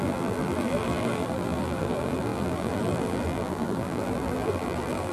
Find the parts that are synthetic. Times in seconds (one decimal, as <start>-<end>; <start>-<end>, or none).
0.0-5.1